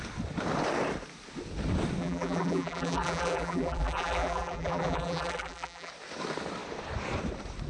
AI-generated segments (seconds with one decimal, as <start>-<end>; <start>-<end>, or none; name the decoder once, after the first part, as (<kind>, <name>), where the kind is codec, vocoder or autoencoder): 2.0-5.9 (vocoder, BigVGAN v2)